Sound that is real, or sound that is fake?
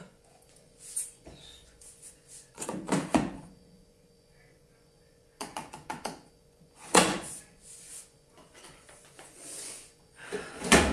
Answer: fake